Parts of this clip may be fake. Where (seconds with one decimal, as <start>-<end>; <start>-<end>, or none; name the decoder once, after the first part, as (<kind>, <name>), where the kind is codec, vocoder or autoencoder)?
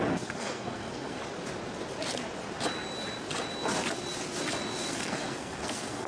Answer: 0.0-1.2 (codec, SNAC); 4.9-6.1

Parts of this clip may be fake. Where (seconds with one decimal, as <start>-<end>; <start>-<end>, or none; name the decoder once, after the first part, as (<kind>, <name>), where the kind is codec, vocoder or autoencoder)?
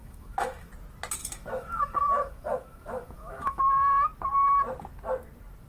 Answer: 0.0-0.7 (autoencoder, DAC-VAE); 1.2-3.6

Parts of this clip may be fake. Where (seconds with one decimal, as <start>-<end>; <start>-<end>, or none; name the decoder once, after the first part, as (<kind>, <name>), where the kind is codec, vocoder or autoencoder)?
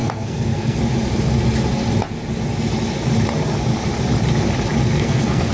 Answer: 0.0-0.8 (codec, SNAC); 4.8-5.5